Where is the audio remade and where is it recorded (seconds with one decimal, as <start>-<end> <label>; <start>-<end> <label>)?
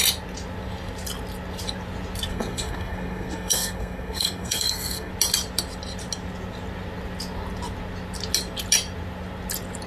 0.0-2.3 recorded; 2.3-5.1 remade; 5.1-9.9 recorded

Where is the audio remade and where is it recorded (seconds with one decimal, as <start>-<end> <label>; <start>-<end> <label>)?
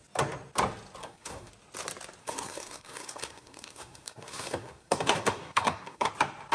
0.0-1.0 recorded; 1.0-1.5 remade; 1.5-2.2 recorded; 2.2-6.1 remade; 6.1-6.5 recorded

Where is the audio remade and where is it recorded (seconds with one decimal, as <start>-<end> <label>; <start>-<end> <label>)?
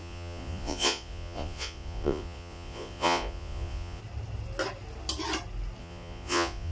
0.0-4.0 remade; 4.0-5.8 recorded; 5.8-6.7 remade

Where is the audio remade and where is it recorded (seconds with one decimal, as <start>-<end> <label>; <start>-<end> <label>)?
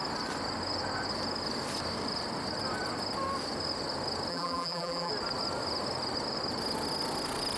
0.0-4.3 recorded; 4.3-5.1 remade; 5.1-7.6 recorded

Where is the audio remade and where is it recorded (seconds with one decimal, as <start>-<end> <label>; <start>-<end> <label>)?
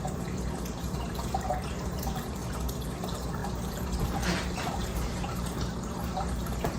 0.0-2.4 remade; 2.4-3.0 recorded; 3.0-3.4 remade; 3.4-4.7 recorded; 4.7-6.8 remade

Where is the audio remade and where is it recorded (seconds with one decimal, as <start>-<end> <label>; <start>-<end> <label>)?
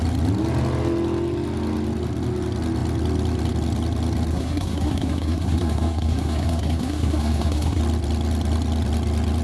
0.0-4.3 recorded; 4.3-7.8 remade; 7.8-9.4 recorded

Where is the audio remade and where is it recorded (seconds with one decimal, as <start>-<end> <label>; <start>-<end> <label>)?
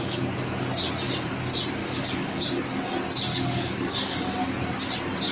0.0-1.8 recorded; 1.8-2.4 remade; 2.4-3.3 recorded; 3.3-4.3 remade; 4.3-5.3 recorded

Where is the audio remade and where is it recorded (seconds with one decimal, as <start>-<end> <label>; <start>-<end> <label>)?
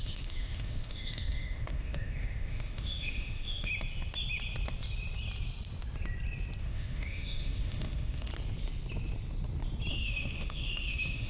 0.0-3.7 remade; 3.7-6.6 recorded; 6.6-8.3 remade; 8.3-9.9 recorded; 9.9-11.3 remade